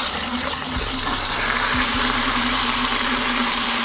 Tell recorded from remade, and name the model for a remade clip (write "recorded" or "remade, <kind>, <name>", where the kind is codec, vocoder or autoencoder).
remade, vocoder, BigVGAN v2